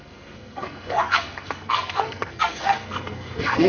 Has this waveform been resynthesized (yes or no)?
yes